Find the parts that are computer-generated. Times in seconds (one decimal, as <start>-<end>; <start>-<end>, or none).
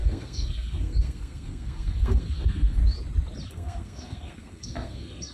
0.0-2.8; 3.5-5.3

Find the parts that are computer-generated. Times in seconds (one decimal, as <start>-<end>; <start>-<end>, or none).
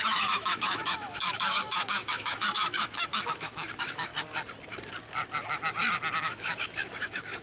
0.0-4.1; 6.2-7.4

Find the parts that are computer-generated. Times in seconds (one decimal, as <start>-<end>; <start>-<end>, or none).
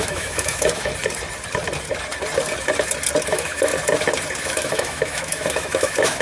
0.0-0.9; 3.3-3.7; 4.4-6.2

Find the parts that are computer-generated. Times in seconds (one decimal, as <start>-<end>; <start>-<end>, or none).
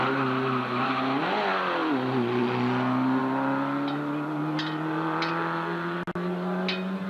none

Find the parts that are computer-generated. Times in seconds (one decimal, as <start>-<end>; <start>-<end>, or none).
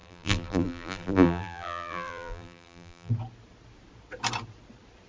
0.0-3.1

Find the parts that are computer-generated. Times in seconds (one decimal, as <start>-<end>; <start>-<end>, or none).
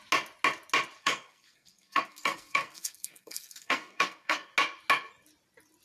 1.0-4.5